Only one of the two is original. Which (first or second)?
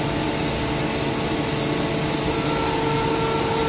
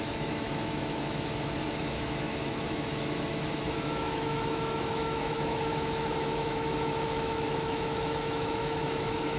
first